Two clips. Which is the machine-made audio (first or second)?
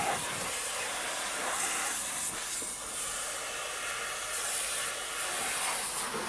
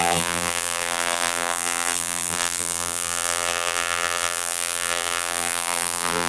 second